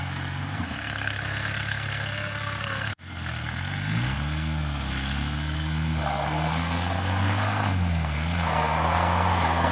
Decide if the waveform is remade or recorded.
remade